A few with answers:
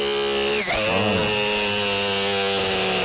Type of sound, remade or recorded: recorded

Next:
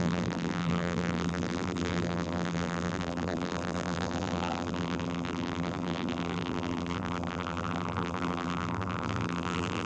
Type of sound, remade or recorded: remade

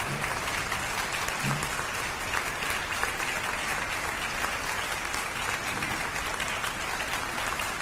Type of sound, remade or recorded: recorded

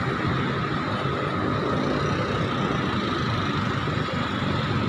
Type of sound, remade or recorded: recorded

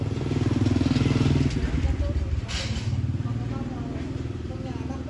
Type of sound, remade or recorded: recorded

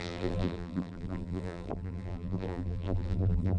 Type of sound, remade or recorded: remade